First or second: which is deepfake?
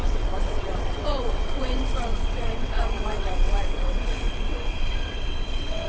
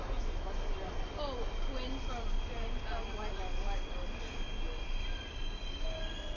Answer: first